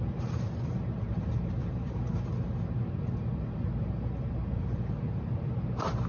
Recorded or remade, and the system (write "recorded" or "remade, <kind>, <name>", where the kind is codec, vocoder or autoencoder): remade, vocoder, BigVGAN v2